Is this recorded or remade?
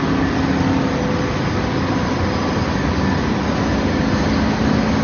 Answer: recorded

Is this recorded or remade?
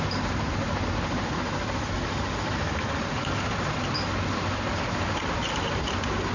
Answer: recorded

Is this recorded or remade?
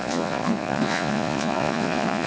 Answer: remade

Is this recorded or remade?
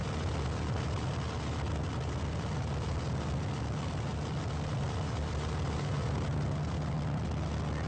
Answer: recorded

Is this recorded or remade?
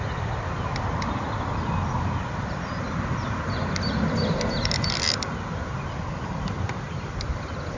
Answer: recorded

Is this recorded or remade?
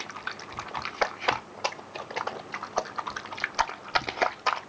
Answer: recorded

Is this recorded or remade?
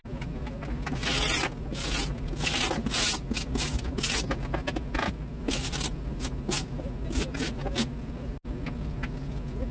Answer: recorded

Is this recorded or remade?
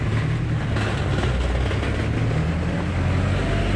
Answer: recorded